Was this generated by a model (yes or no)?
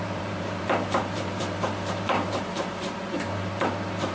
yes